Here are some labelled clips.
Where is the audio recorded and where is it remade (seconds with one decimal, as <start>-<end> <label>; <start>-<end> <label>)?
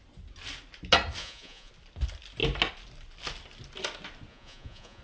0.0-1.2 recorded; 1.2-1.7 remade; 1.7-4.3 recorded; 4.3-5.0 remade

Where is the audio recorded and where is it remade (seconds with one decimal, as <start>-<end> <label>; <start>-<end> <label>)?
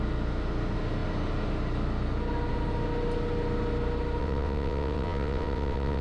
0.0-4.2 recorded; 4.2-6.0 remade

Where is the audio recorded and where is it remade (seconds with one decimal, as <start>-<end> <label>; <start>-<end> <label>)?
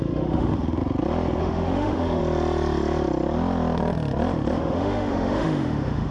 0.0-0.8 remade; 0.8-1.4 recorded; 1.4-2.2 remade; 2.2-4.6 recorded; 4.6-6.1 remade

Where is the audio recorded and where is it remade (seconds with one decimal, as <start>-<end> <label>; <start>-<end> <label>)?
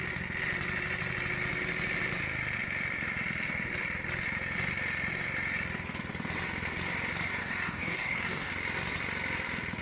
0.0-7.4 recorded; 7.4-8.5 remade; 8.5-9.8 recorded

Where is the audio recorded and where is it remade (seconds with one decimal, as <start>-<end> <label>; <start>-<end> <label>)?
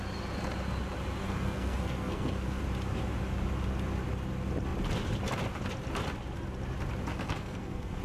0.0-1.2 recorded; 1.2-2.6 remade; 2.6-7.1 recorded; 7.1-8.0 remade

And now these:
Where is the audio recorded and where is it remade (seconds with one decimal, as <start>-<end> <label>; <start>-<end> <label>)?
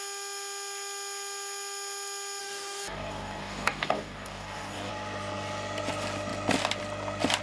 0.0-2.4 recorded; 2.4-4.9 remade; 4.9-7.4 recorded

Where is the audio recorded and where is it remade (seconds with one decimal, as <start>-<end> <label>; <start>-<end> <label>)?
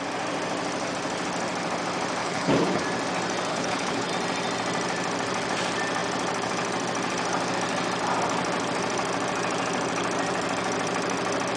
0.0-2.2 recorded; 2.2-2.8 remade; 2.8-3.5 recorded; 3.5-4.1 remade; 4.1-11.6 recorded